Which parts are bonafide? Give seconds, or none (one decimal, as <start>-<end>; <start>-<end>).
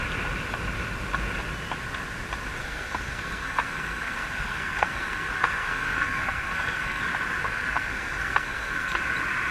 0.0-2.6; 7.0-7.4; 9.0-9.5